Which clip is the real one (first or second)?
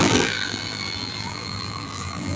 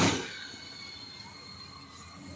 second